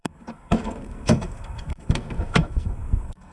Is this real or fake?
fake